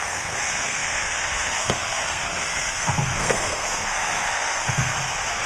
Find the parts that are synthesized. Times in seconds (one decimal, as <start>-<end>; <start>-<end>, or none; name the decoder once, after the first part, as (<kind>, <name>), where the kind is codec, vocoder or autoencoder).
0.0-4.9 (codec, SNAC)